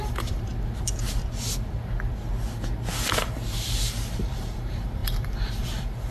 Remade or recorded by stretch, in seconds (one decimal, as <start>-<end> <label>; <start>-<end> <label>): 0.0-0.5 remade; 0.5-4.2 recorded; 4.2-6.1 remade